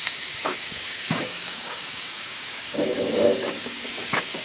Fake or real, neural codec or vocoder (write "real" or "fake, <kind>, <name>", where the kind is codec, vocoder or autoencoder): fake, codec, DAC